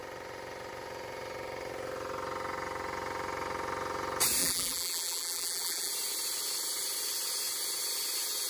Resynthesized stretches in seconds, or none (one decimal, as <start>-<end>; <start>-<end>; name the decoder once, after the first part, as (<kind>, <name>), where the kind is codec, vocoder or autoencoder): 4.4-5.9 (vocoder, BigVGAN v2)